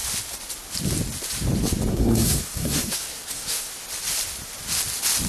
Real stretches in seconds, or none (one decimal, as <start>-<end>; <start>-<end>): 0.0-1.9; 3.7-5.3